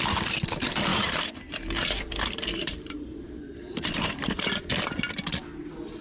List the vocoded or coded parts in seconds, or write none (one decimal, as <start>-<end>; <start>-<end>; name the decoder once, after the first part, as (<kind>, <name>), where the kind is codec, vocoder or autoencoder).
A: 0.9-4.5 (vocoder, BigVGAN v2)